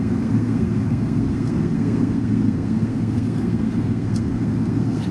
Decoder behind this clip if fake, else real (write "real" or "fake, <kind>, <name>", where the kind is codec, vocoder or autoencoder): fake, codec, SNAC